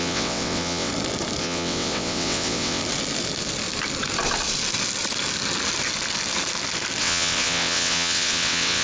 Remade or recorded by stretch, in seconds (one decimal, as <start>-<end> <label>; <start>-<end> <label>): 0.0-0.9 remade; 0.9-1.4 recorded; 1.4-2.8 remade; 2.8-7.0 recorded; 7.0-8.8 remade